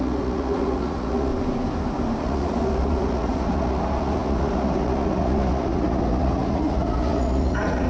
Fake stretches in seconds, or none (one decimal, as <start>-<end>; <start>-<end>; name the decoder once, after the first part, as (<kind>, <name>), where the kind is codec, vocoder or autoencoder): 0.0-1.3 (vocoder, Vocos); 2.2-7.9